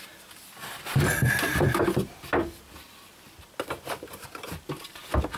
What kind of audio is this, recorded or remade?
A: recorded